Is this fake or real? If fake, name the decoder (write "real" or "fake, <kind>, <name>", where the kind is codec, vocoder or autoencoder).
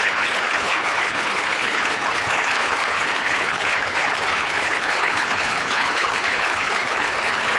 fake, codec, HILCodec